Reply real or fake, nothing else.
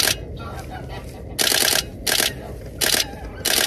real